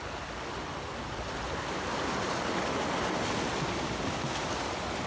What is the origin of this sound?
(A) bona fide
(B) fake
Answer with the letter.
A